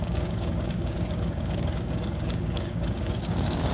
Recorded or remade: remade